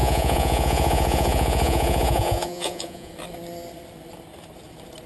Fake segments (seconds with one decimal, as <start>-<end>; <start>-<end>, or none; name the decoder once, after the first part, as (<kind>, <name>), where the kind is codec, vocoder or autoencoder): 0.0-3.1 (vocoder, Vocos)